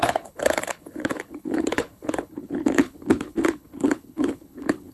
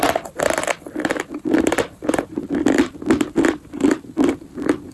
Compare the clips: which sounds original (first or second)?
second